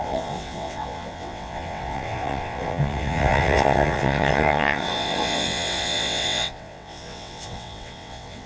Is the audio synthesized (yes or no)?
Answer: yes